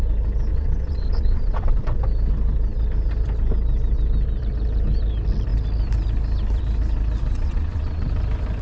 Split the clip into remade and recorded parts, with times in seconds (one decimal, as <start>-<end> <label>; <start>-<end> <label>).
0.0-0.5 recorded; 0.5-2.0 remade; 2.0-7.3 recorded; 7.3-8.1 remade; 8.1-8.6 recorded